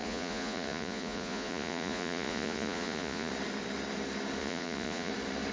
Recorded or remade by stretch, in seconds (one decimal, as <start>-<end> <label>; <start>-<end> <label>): 0.0-3.3 remade; 3.3-4.4 recorded; 4.4-5.1 remade; 5.1-5.5 recorded